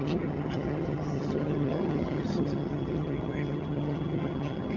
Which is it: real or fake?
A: fake